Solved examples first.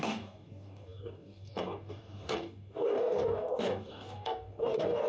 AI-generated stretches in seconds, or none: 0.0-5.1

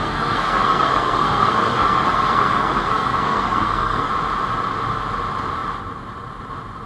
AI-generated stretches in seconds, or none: 0.0-4.1

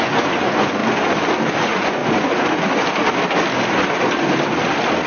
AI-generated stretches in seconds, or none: 0.0-0.8; 1.6-2.0

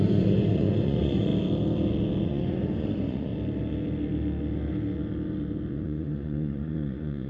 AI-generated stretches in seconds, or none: 0.0-1.3; 2.2-3.3; 5.7-7.3

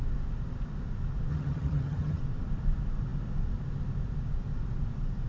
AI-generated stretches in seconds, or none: 1.3-2.2

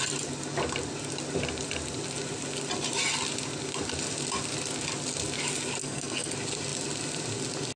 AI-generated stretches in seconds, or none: 5.8-6.3

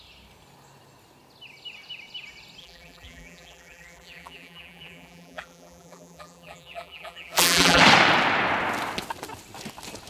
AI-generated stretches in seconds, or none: 2.6-7.8

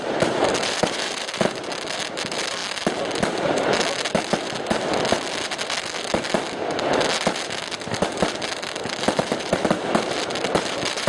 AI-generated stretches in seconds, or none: 0.0-2.6; 7.8-11.1